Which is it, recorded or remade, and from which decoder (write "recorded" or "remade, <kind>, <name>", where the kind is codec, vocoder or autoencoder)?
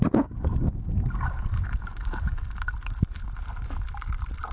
recorded